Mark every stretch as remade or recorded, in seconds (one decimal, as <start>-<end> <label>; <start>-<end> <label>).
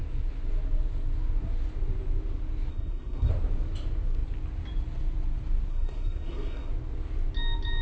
0.0-2.7 recorded; 2.7-3.3 remade; 3.3-5.7 recorded; 5.7-6.7 remade; 6.7-7.8 recorded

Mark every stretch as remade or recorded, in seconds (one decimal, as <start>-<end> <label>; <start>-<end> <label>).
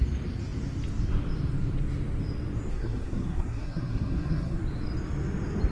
0.0-2.7 recorded; 2.7-4.6 remade; 4.6-5.7 recorded